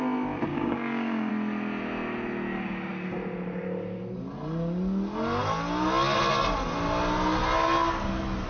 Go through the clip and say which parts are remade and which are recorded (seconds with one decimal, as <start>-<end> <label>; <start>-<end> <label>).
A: 0.0-0.5 recorded; 0.5-1.3 remade; 1.3-8.5 recorded

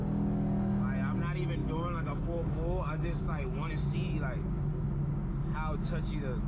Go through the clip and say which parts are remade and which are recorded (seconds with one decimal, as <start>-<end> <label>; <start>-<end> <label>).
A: 0.0-1.6 recorded; 1.6-3.7 remade; 3.7-6.5 recorded